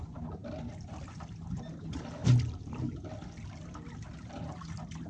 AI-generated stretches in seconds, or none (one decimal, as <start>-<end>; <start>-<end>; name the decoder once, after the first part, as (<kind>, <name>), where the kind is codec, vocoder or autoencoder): none